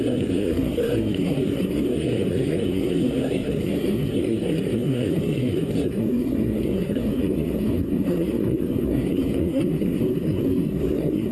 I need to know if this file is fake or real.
fake